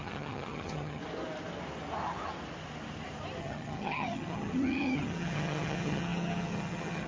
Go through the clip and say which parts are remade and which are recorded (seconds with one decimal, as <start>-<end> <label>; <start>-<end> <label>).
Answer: 0.0-1.0 remade; 1.0-3.4 recorded; 3.4-7.1 remade